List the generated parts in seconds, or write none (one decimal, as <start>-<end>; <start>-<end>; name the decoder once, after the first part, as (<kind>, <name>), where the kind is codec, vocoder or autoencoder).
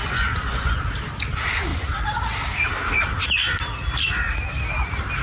0.0-0.8 (vocoder, Vocos)